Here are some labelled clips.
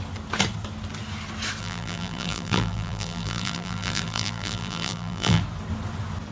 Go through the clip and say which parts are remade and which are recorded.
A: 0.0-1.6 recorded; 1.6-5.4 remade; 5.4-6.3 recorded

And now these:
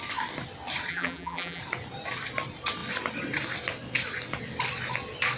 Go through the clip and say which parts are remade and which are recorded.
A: 0.0-0.9 recorded; 0.9-1.6 remade; 1.6-5.4 recorded

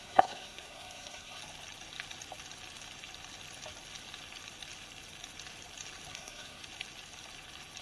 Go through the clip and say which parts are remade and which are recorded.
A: 0.0-1.4 remade; 1.4-6.1 recorded; 6.1-6.6 remade; 6.6-7.8 recorded

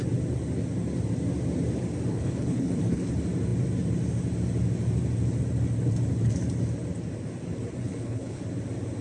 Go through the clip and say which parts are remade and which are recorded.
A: 0.0-2.1 recorded; 2.1-3.1 remade; 3.1-7.8 recorded; 7.8-8.4 remade; 8.4-9.0 recorded

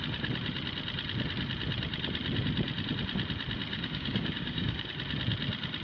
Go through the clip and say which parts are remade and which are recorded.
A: 0.0-3.7 recorded; 3.7-4.9 remade; 4.9-5.8 recorded

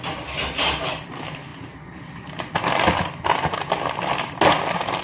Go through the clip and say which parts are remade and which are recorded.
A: 0.0-5.0 recorded

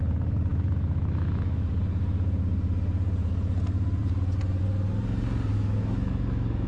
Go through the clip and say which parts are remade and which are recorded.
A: 0.0-0.5 recorded; 0.5-1.7 remade; 1.7-5.5 recorded; 5.5-6.7 remade

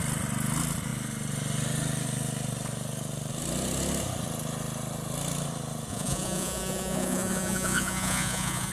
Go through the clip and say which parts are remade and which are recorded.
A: 0.0-5.9 recorded; 5.9-8.7 remade